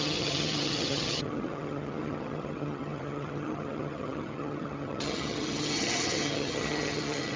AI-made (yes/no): yes